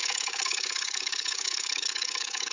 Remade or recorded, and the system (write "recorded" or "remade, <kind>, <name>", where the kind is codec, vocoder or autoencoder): remade, codec, DAC